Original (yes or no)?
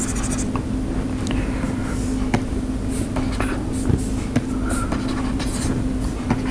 yes